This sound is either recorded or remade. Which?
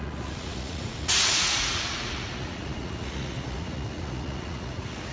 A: remade